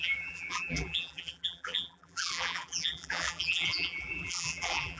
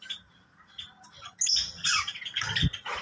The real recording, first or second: second